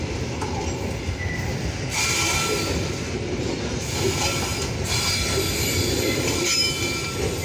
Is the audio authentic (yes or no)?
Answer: yes